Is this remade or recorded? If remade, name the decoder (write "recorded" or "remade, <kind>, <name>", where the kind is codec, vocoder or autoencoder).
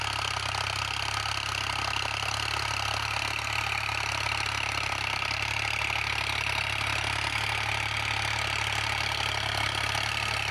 recorded